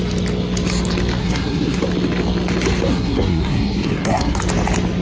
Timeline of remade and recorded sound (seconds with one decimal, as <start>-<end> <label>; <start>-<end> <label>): 0.0-1.2 recorded; 1.2-1.8 remade; 1.8-2.9 recorded; 2.9-4.4 remade; 4.4-5.0 recorded